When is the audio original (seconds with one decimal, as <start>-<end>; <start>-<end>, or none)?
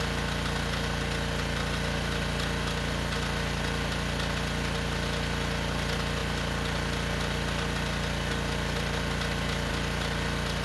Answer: 0.0-10.6